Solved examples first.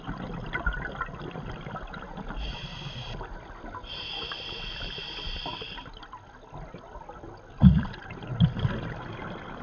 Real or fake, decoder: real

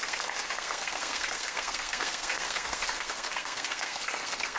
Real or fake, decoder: fake, codec, SNAC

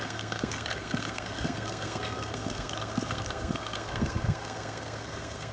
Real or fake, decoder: fake, codec, SNAC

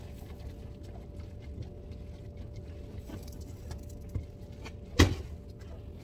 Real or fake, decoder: real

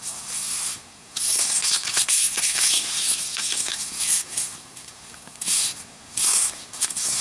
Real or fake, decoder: fake, codec, SNAC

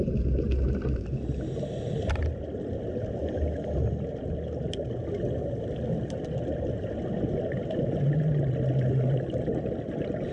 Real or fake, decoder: real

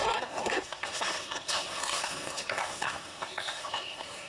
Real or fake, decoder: fake, codec, SNAC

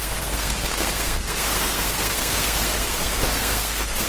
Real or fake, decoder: fake, codec, SNAC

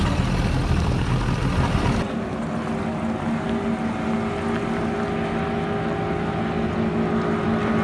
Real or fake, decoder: real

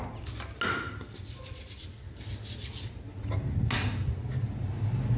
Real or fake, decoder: real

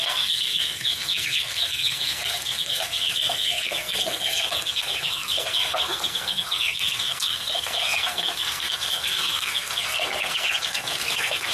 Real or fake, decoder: fake, codec, SNAC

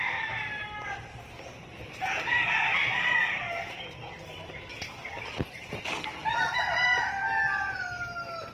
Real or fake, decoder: real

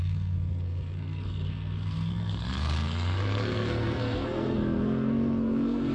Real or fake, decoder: fake, codec, SNAC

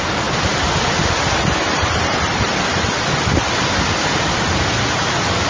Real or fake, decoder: real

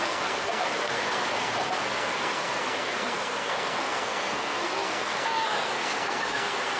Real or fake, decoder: fake, codec, SNAC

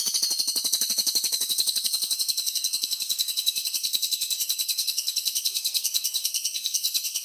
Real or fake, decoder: fake, codec, SNAC